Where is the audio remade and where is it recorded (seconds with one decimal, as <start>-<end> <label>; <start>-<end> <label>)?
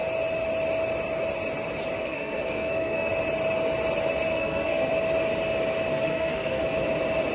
0.0-2.0 recorded; 2.0-3.1 remade; 3.1-4.3 recorded; 4.3-4.9 remade; 4.9-5.9 recorded; 5.9-6.6 remade; 6.6-7.3 recorded